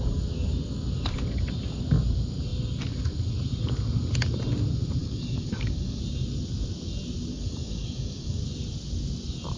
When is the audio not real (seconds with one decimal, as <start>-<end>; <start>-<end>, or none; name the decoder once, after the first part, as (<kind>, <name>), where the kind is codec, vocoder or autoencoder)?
5.0-6.0 (codec, DAC); 7.3-8.4